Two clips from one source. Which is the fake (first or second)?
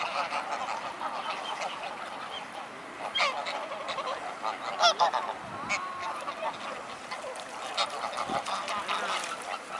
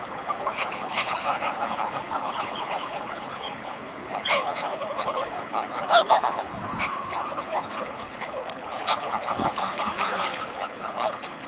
second